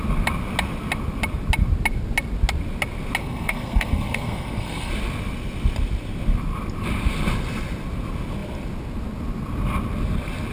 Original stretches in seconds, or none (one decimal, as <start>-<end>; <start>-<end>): 0.0-3.2; 4.9-10.5